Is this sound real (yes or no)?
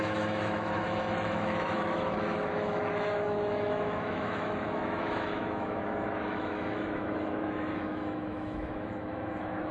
no